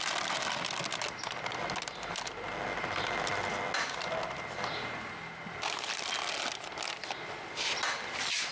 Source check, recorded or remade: recorded